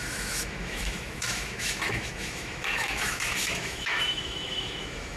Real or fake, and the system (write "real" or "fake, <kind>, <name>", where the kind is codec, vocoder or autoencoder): fake, autoencoder, DAC-VAE